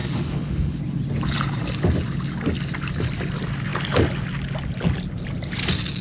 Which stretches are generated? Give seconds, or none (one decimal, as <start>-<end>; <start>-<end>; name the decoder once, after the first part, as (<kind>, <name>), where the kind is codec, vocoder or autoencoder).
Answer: 0.0-0.8 (autoencoder, DAC-VAE)